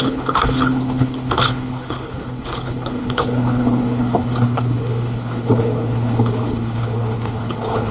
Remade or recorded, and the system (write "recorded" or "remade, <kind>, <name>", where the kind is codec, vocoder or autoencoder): remade, codec, HILCodec